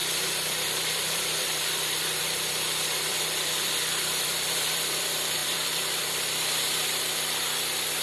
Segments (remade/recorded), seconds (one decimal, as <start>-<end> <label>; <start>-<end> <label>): 0.0-8.0 remade